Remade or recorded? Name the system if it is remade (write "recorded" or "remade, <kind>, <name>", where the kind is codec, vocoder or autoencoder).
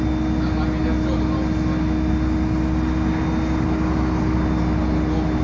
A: recorded